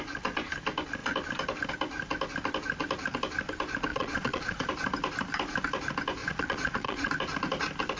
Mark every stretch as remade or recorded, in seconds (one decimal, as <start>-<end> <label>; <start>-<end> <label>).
0.0-3.9 recorded; 3.9-4.7 remade; 4.7-6.2 recorded; 6.2-7.1 remade; 7.1-8.0 recorded